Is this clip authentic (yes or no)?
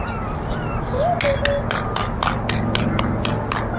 yes